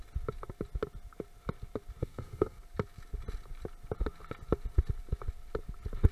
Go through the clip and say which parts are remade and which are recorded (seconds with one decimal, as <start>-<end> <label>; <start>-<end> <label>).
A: 0.0-2.0 recorded; 2.0-2.6 remade; 2.6-6.1 recorded

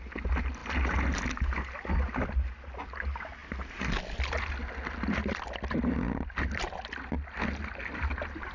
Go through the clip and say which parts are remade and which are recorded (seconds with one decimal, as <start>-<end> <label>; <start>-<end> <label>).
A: 0.0-8.5 recorded

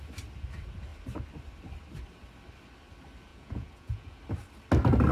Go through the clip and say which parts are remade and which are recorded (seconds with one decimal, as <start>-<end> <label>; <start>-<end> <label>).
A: 0.0-3.3 recorded; 3.3-4.2 remade; 4.2-5.1 recorded

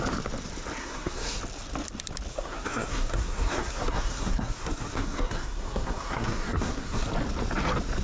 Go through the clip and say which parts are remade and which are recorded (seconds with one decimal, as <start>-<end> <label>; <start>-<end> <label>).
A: 0.0-0.8 recorded; 0.8-1.4 remade; 1.4-2.3 recorded; 2.3-7.1 remade; 7.1-8.0 recorded

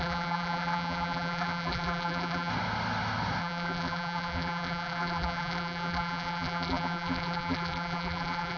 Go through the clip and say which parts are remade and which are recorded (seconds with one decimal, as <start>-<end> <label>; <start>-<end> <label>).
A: 0.0-2.5 remade; 2.5-3.4 recorded; 3.4-8.6 remade

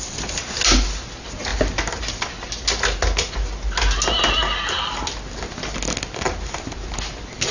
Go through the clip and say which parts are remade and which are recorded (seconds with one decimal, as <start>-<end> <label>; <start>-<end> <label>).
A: 0.0-7.5 recorded